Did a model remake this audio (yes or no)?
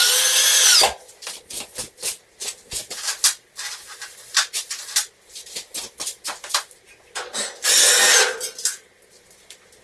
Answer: no